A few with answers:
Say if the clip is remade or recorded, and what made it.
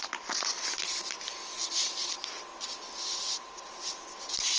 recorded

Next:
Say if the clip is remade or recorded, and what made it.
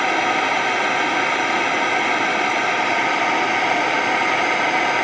recorded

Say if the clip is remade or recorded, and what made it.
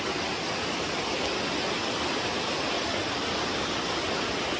recorded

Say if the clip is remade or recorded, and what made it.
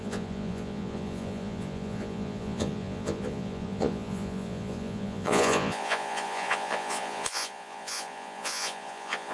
remade, vocoder, Vocos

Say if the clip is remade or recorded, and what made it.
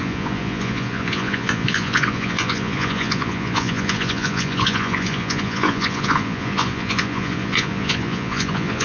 remade, vocoder, Vocos